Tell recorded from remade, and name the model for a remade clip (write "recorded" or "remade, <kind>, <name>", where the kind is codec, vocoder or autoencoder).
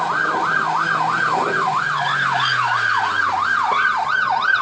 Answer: recorded